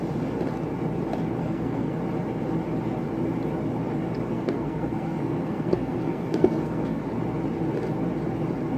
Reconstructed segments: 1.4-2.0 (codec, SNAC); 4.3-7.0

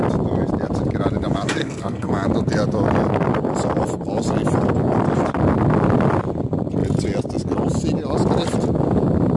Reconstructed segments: 1.6-2.1 (codec, SNAC)

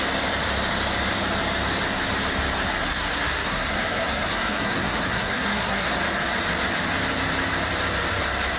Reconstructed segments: 2.8-5.9 (codec, SNAC)

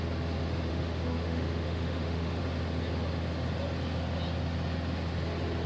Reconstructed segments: 0.7-2.4 (autoencoder, DAC-VAE)

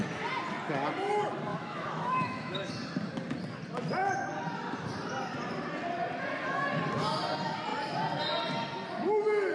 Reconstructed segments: 1.5-2.7 (autoencoder, DAC-VAE)

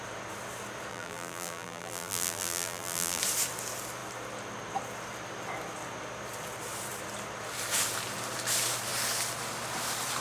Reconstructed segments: 0.9-3.2 (vocoder, BigVGAN v2)

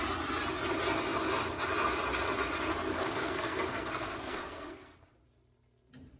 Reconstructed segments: 2.9-5.1 (codec, SNAC)

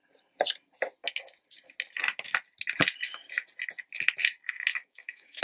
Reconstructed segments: 4.7-5.4 (autoencoder, DAC-VAE)